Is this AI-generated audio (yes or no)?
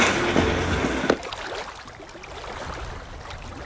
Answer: no